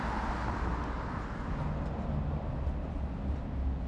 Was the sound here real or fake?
real